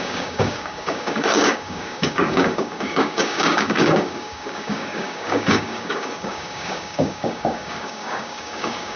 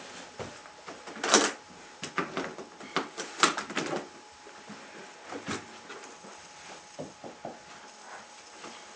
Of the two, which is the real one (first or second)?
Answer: second